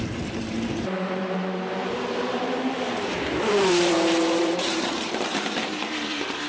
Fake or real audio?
fake